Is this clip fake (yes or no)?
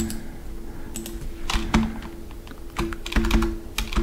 no